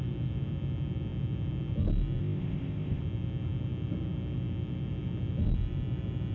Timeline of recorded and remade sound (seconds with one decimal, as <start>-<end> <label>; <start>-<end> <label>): 0.0-2.2 recorded; 2.2-3.0 remade; 3.0-6.3 recorded